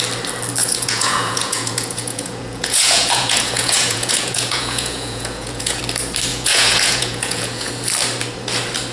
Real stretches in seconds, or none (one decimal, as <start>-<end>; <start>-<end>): 0.0-0.6; 5.8-6.3; 7.7-8.9